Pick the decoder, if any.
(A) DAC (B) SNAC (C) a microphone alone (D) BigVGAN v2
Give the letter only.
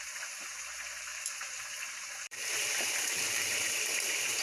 D